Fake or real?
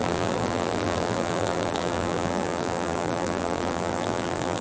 fake